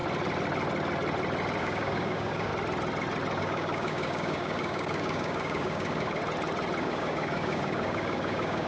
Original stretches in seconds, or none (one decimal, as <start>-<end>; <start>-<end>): 0.0-1.6; 2.5-3.4; 6.2-6.8